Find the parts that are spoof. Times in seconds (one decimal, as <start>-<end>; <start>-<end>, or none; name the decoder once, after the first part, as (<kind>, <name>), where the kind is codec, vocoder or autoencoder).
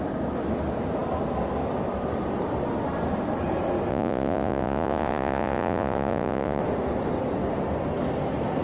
3.9-6.6 (vocoder, Vocos)